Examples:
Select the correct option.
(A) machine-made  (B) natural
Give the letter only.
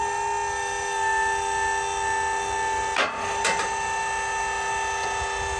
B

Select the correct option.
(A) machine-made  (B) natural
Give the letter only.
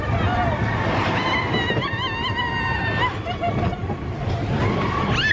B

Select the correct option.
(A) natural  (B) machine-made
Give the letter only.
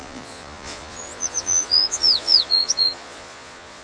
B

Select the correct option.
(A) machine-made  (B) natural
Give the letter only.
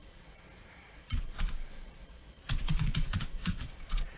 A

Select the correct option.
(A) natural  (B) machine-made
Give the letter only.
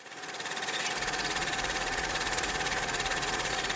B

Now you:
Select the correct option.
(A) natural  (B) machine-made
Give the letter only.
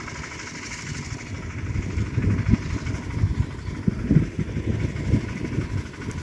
A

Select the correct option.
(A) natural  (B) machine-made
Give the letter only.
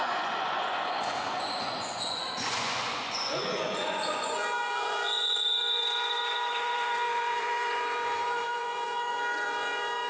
B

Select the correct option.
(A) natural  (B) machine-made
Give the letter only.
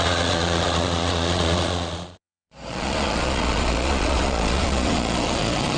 B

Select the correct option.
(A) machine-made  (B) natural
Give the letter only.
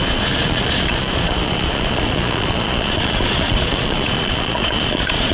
A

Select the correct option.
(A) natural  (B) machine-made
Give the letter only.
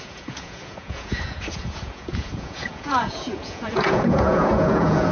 B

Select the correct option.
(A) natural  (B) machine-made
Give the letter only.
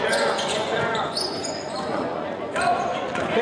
B